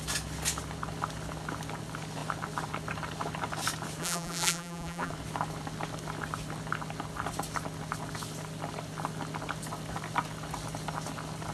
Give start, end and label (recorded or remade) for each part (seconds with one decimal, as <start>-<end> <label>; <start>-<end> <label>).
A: 0.0-4.0 recorded; 4.0-5.1 remade; 5.1-11.5 recorded